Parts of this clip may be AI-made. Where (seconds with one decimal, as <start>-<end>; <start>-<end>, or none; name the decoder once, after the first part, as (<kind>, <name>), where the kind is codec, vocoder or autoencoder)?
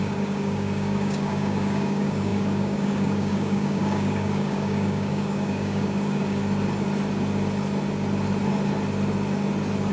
0.0-6.4 (codec, DAC)